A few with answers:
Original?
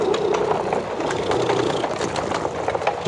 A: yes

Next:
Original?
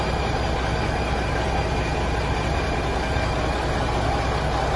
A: yes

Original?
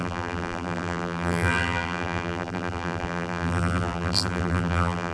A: no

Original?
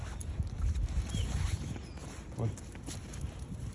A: yes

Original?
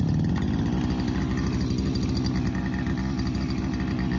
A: yes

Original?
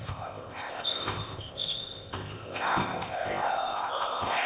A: no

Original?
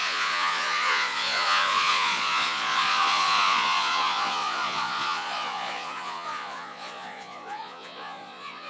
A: no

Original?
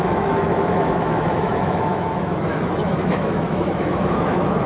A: no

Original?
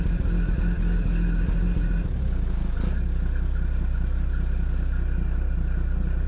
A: yes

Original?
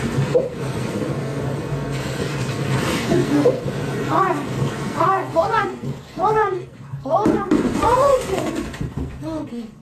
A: no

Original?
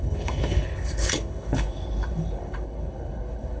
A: no